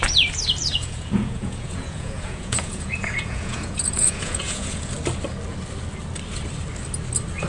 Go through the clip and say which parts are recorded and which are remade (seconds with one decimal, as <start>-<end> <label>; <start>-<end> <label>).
0.0-0.7 recorded; 0.7-4.9 remade; 4.9-7.5 recorded